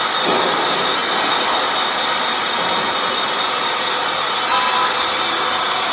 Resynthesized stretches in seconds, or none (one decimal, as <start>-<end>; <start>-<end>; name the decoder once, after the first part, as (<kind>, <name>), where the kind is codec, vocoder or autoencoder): none

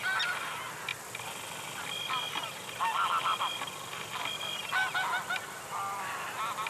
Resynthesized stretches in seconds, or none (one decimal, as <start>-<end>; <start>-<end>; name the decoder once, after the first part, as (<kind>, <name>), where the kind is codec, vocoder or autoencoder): none

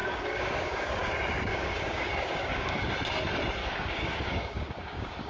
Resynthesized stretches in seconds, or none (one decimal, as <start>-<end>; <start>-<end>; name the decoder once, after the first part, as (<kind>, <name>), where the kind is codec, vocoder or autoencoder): 0.0-1.1 (codec, DAC); 1.5-2.9; 3.6-5.3

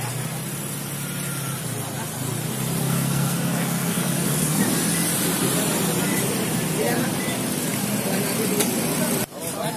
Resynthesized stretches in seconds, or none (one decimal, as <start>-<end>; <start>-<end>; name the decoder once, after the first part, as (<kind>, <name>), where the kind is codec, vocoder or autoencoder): 2.8-4.6 (codec, SNAC)